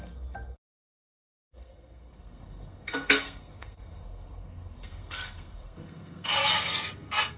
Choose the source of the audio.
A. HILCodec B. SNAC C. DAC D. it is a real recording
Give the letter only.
B